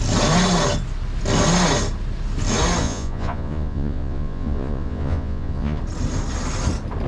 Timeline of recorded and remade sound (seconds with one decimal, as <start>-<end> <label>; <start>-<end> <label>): 0.0-2.8 recorded; 2.8-5.8 remade; 5.8-7.1 recorded